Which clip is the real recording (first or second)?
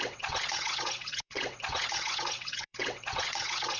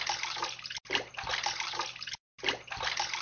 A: second